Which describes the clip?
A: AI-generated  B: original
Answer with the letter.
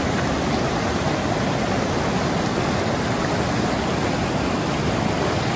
B